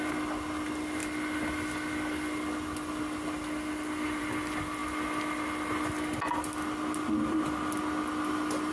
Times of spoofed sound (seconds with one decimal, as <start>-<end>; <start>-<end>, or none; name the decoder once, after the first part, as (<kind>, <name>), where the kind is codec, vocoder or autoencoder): none